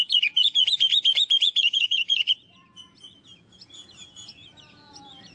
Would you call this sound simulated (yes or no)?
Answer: yes